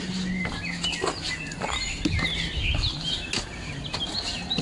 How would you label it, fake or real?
real